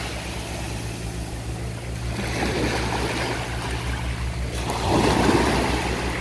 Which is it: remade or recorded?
recorded